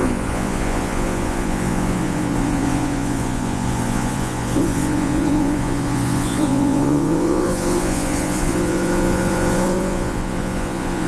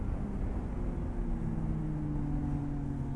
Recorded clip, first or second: second